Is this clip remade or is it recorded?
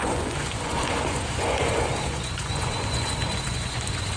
remade